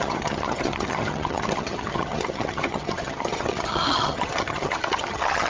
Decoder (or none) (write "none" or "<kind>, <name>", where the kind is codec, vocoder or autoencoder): vocoder, HiFi-GAN